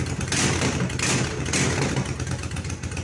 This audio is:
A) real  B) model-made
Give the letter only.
A